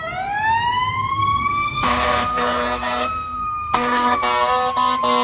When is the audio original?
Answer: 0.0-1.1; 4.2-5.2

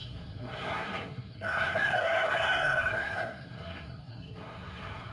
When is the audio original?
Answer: none

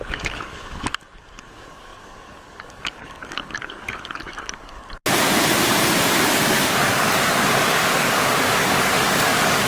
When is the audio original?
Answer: 4.8-6.2

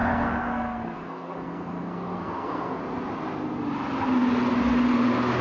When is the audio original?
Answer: 2.8-5.4

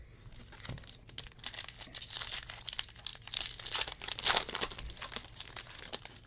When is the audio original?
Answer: 0.0-6.3

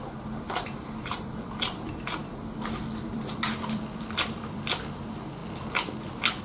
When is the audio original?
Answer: 2.2-3.1; 5.4-6.0

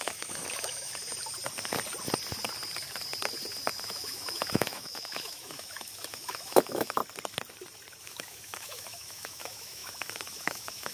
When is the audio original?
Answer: 1.0-3.7; 7.0-8.0